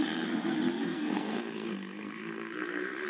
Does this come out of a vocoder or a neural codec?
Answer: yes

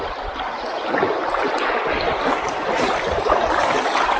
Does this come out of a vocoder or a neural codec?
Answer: yes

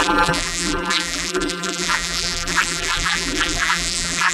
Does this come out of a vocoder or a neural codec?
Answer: yes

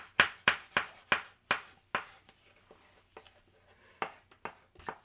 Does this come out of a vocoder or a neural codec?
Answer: no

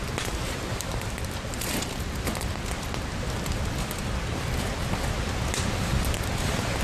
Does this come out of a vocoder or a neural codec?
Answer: no